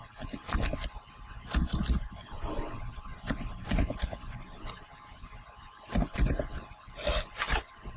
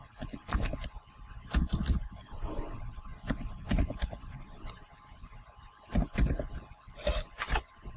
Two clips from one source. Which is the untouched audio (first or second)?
first